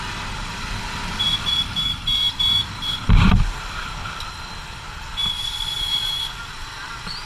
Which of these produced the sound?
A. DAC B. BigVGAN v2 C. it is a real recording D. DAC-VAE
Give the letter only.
B